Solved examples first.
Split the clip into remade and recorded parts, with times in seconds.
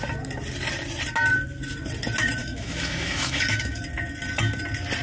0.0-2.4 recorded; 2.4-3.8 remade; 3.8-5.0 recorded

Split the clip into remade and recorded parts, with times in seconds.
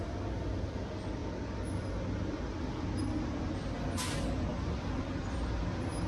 0.0-6.1 recorded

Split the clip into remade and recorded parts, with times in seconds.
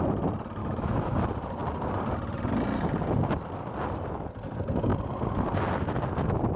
0.0-0.6 recorded; 0.6-1.2 remade; 1.2-6.6 recorded